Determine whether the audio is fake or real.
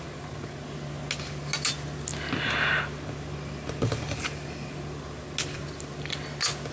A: real